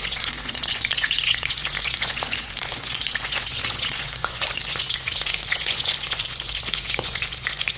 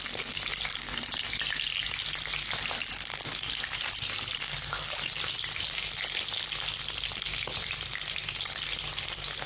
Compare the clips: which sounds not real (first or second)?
first